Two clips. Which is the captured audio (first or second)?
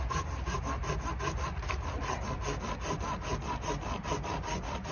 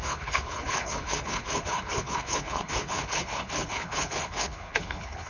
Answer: first